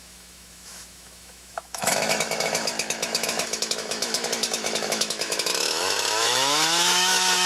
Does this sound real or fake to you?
fake